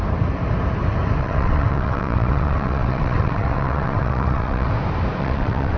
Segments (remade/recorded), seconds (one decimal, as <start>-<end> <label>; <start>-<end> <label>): 0.0-1.2 recorded; 1.2-4.7 remade; 4.7-5.2 recorded; 5.2-5.8 remade